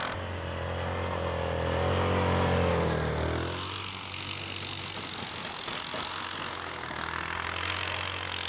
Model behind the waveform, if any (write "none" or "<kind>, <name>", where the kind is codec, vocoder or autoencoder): none